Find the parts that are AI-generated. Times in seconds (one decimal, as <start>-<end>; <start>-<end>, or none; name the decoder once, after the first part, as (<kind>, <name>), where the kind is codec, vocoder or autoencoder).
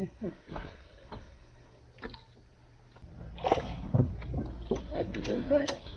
0.0-1.8 (codec, SNAC); 3.5-4.1; 4.8-6.0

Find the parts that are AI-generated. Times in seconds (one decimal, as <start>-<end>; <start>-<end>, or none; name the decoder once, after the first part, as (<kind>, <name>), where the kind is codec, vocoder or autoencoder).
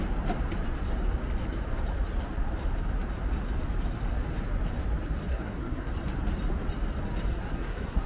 5.3-5.9 (codec, SNAC); 7.3-8.1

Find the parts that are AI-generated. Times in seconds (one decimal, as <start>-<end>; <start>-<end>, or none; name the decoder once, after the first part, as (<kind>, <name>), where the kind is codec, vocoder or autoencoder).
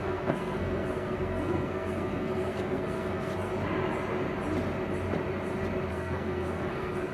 0.0-3.5 (codec, SNAC); 5.9-7.1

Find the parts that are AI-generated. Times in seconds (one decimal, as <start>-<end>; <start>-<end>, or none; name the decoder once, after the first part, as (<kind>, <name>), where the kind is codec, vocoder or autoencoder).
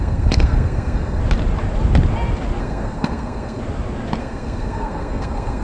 0.0-1.2 (codec, SNAC); 2.6-3.6; 4.2-5.6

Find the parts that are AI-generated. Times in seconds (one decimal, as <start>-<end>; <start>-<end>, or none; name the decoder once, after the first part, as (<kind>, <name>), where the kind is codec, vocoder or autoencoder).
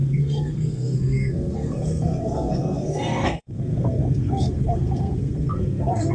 0.0-6.1 (codec, SNAC)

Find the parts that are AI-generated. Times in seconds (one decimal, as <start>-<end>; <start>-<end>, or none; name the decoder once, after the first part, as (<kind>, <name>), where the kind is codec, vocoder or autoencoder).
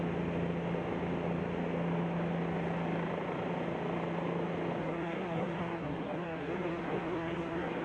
4.8-7.8 (codec, SNAC)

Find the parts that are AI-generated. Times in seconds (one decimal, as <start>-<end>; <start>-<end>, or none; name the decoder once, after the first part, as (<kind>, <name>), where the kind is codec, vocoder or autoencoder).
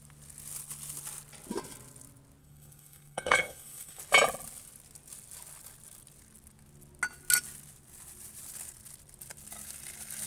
2.4-4.0 (codec, SNAC)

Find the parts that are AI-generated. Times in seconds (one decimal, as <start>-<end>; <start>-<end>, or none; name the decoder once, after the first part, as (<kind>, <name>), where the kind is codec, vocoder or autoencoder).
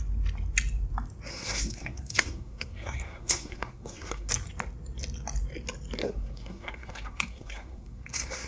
1.3-4.3 (codec, SNAC); 6.0-8.5